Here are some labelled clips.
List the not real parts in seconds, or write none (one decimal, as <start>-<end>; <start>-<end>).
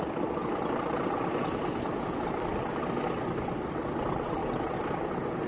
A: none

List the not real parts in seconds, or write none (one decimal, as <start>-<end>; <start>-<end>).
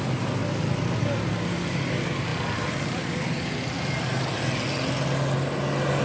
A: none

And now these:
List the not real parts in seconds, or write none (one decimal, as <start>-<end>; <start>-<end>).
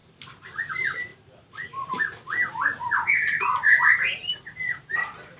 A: none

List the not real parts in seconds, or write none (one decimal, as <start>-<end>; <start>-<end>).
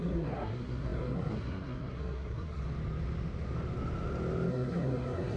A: 0.0-2.6; 4.5-5.4